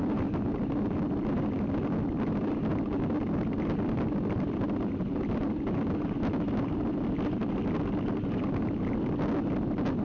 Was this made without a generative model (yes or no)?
yes